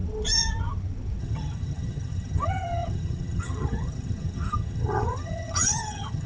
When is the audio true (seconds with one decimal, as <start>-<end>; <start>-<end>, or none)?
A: 0.0-1.2